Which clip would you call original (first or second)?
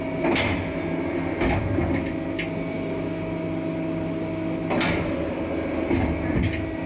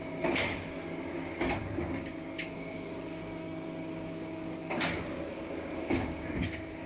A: first